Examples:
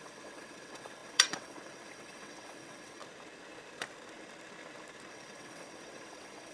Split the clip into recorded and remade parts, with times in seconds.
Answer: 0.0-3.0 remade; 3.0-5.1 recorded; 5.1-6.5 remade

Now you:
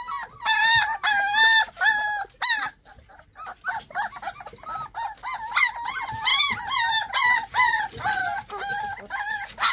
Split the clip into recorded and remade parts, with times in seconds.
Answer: 0.0-9.7 recorded

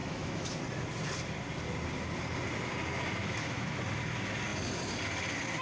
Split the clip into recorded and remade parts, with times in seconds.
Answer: 0.0-0.6 remade; 0.6-3.2 recorded; 3.2-3.8 remade; 3.8-5.6 recorded

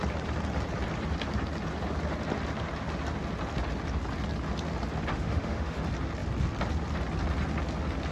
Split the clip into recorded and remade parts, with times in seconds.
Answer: 0.0-5.1 recorded; 5.1-5.8 remade; 5.8-8.1 recorded

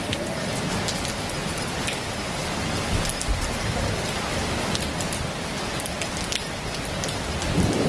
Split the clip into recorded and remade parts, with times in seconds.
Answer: 0.0-1.4 recorded; 1.4-2.4 remade; 2.4-7.9 recorded

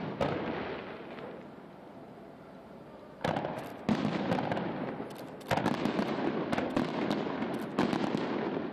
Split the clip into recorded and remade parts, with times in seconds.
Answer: 0.0-8.7 recorded

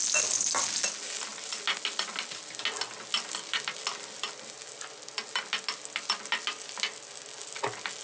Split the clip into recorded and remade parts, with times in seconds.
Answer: 0.0-8.0 recorded

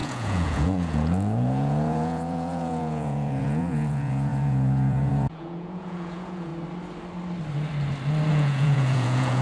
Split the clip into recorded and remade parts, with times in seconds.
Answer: 0.0-6.5 remade; 6.5-8.3 recorded; 8.3-9.4 remade